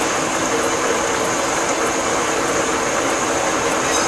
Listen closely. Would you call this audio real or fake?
fake